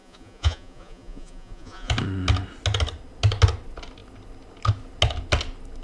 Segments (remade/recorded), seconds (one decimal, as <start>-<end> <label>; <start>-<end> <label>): 0.0-1.9 remade; 1.9-5.8 recorded